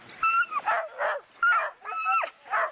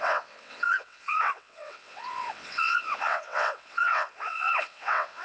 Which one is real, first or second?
first